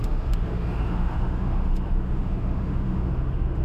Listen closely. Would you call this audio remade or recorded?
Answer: remade